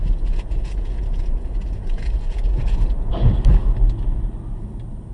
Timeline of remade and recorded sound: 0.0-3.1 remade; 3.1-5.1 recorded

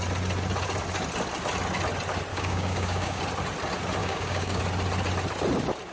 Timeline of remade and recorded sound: 0.0-2.3 recorded; 2.3-3.2 remade; 3.2-4.0 recorded; 4.0-4.6 remade; 4.6-5.9 recorded

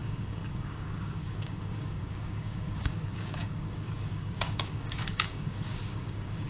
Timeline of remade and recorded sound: 0.0-6.5 remade